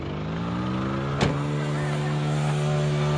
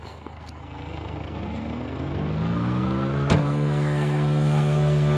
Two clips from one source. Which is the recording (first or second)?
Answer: first